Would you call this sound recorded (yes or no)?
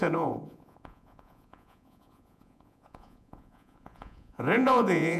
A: no